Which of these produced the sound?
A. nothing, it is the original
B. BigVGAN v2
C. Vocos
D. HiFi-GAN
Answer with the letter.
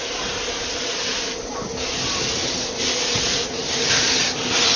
A